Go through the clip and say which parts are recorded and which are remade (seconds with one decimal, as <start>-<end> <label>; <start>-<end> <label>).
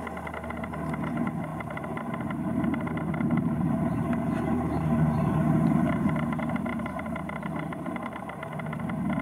0.0-1.5 recorded; 1.5-6.1 remade; 6.1-6.7 recorded; 6.7-8.4 remade; 8.4-9.2 recorded